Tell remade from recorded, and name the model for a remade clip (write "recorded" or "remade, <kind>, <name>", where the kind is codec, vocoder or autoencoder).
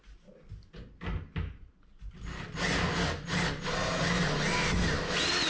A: recorded